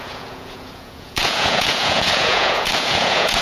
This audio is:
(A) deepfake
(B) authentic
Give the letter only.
A